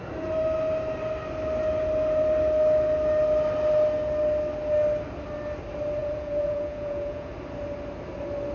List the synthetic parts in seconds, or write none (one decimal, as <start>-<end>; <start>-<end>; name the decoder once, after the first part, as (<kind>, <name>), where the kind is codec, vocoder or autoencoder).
6.0-7.3 (vocoder, Vocos)